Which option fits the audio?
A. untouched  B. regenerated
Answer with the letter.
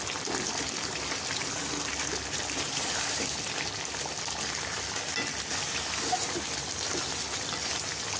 A